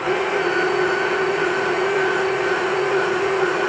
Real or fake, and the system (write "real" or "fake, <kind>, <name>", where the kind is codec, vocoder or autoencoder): fake, vocoder, Vocos